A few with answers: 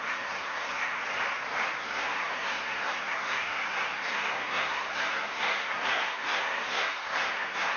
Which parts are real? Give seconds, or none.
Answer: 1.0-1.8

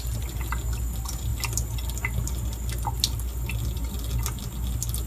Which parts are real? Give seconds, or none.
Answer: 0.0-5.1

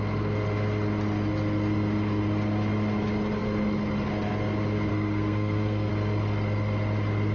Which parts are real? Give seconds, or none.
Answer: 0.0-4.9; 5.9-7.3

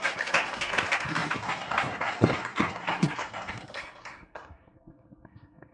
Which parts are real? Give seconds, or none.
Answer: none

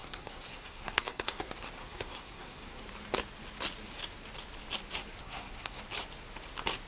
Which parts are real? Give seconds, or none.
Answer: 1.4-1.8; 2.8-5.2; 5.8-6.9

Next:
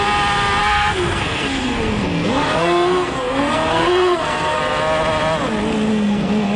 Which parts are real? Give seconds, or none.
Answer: 0.0-0.6; 4.6-5.9

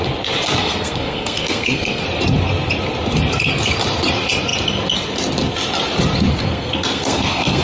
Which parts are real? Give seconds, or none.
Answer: 0.0-0.6; 2.0-6.3

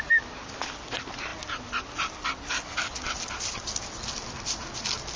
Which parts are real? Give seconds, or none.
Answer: 0.0-5.2